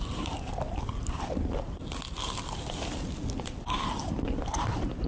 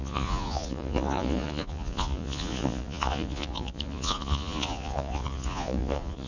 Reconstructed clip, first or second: second